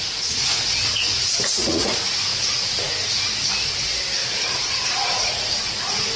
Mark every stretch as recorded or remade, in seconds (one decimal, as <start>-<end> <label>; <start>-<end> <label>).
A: 0.0-1.9 remade; 1.9-2.3 recorded; 2.3-2.9 remade; 2.9-4.2 recorded; 4.2-6.2 remade